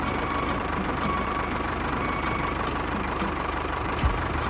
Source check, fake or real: fake